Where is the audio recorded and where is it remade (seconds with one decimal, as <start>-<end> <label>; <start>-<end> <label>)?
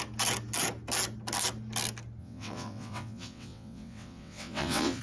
0.0-2.2 recorded; 2.2-5.0 remade